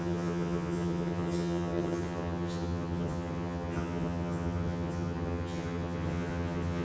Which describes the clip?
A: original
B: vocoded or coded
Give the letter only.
B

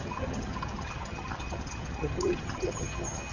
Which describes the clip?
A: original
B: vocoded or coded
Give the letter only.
B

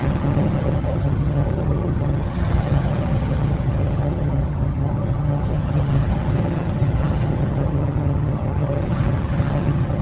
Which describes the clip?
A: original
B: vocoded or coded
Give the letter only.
B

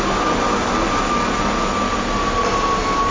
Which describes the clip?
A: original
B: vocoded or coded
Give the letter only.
A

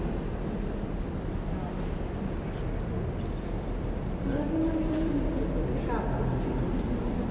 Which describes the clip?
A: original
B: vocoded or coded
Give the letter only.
A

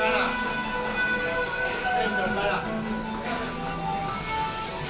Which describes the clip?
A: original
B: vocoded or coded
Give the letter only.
A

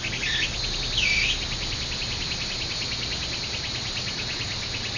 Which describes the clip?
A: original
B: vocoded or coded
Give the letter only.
A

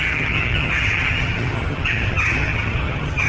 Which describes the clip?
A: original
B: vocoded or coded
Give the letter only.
B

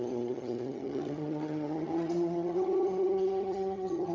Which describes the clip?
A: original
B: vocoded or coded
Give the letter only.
B